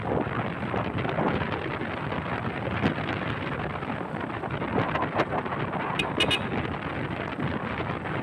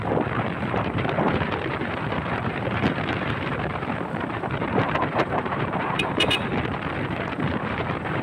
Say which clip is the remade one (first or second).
second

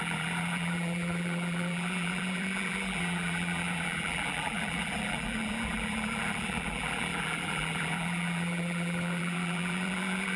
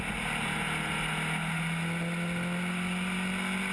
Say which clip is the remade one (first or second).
first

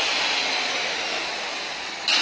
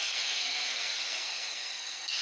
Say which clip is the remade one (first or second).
second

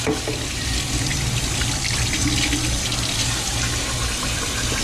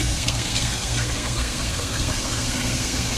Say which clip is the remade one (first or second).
second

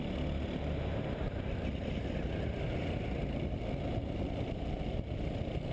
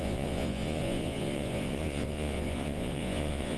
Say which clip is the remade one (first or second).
second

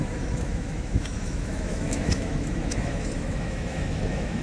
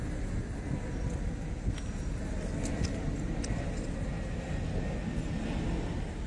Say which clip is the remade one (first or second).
first